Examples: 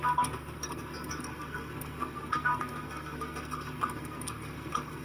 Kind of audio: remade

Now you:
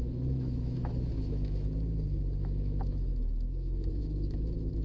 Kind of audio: remade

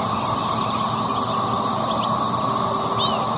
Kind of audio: recorded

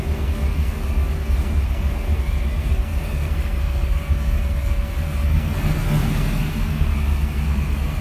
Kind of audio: remade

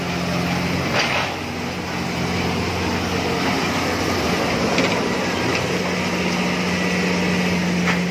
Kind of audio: recorded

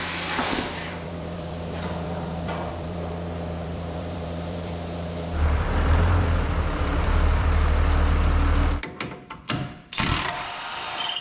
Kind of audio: remade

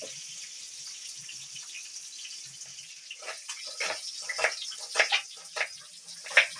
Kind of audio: recorded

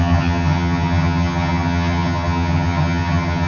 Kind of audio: remade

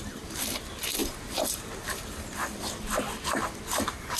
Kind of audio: recorded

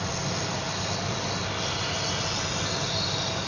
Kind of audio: recorded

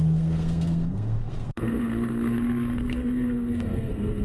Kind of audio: remade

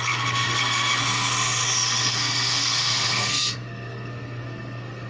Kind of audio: remade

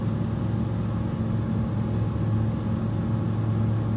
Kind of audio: recorded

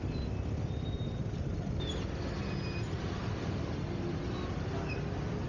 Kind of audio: recorded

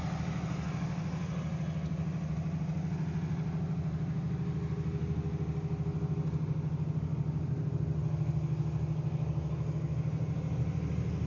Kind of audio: recorded